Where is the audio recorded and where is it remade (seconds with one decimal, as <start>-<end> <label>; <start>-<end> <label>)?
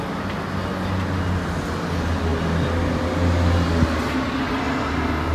0.0-5.3 recorded